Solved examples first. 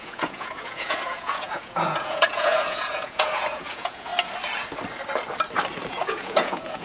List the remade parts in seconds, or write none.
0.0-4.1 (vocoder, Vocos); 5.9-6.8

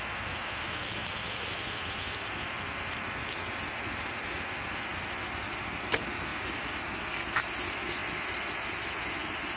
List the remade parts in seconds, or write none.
none

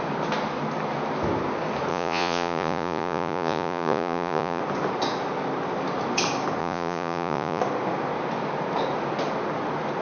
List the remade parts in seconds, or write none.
1.9-4.6 (vocoder, Vocos); 6.6-7.6

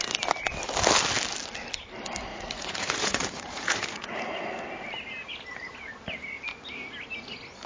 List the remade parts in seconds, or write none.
2.3-4.2 (vocoder, Vocos)

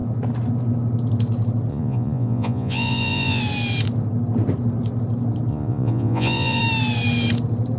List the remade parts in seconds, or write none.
1.7-3.4 (vocoder, Vocos); 5.5-6.6

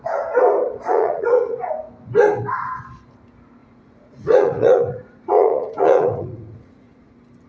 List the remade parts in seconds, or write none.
0.9-1.7 (vocoder, Vocos); 3.6-7.1

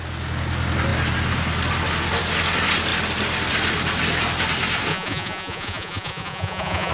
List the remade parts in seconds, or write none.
4.9-6.9 (vocoder, Vocos)

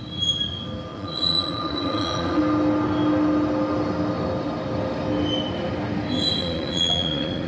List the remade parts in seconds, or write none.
0.9-2.4 (vocoder, Vocos); 6.4-7.5